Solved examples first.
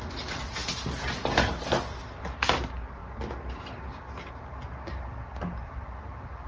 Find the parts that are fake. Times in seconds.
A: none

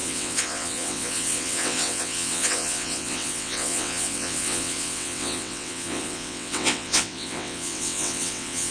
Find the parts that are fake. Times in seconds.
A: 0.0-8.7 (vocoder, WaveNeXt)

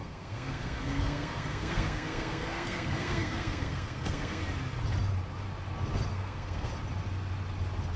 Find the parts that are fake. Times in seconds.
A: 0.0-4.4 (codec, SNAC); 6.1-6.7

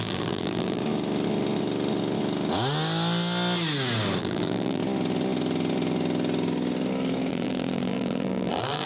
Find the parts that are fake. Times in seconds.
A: 0.0-0.8 (vocoder, BigVGAN v2); 4.2-4.8; 7.3-8.9

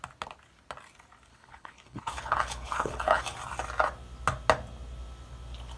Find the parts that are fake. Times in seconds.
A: 1.3-3.2 (codec, HILCodec)

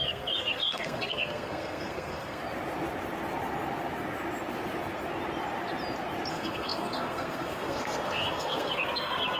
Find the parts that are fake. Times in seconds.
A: 0.0-2.4 (codec, SNAC); 6.3-9.4

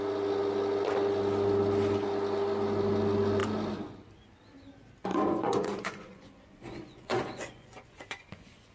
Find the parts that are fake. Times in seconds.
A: 5.1-8.7 (vocoder, Vocos)

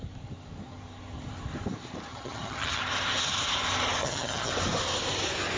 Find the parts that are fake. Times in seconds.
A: 2.1-2.8 (vocoder, HiFi-GAN); 4.0-4.5